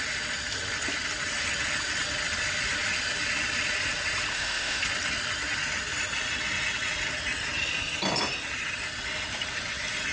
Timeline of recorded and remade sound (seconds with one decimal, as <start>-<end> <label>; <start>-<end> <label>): 0.0-4.3 recorded; 4.3-4.8 remade; 4.8-10.1 recorded